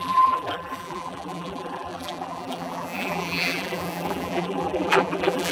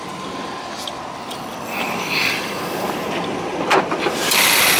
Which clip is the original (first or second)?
second